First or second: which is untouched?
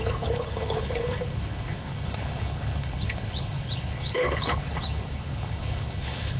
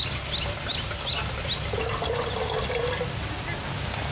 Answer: second